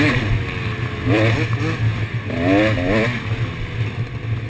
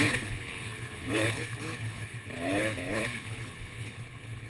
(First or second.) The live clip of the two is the first